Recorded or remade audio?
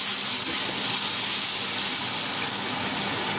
recorded